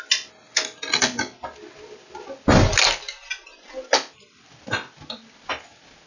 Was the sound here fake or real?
real